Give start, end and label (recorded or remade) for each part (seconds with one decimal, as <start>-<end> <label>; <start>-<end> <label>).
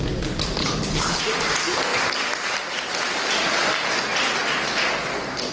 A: 0.0-0.6 recorded; 0.6-1.2 remade; 1.2-5.5 recorded